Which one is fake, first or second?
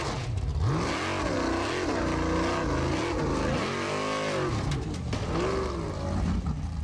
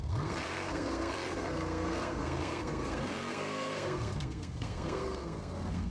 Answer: second